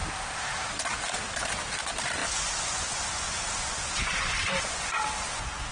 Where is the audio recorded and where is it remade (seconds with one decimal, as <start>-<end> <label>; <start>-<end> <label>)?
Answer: 0.0-2.2 recorded; 2.2-5.7 remade